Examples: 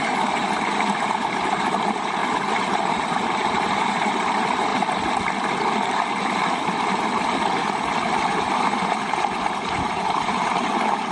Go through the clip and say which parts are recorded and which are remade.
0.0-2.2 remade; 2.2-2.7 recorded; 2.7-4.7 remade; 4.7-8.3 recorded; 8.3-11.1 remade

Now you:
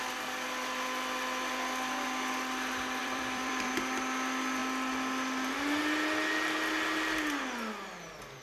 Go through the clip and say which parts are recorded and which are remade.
0.0-3.0 recorded; 3.0-3.7 remade; 3.7-8.4 recorded